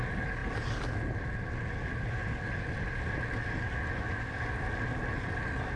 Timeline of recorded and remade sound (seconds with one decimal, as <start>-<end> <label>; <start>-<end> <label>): 0.0-5.8 recorded